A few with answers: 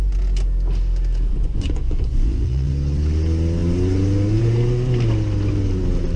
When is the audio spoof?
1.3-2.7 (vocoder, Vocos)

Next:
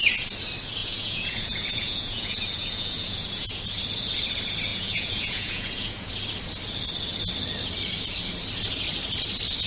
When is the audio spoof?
0.8-3.6 (vocoder, Vocos); 4.7-6.1

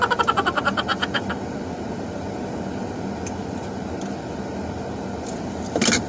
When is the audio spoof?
none

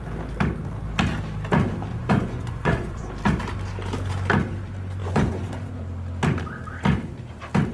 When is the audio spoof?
1.9-3.1 (vocoder, Vocos); 5.0-5.8